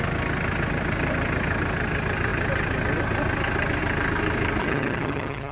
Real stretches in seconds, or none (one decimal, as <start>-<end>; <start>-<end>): 0.0-4.6